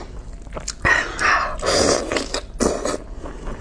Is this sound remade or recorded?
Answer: recorded